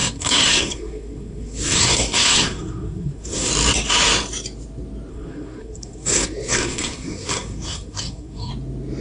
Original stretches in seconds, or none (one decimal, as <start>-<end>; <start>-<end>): 3.5-5.1; 8.5-9.0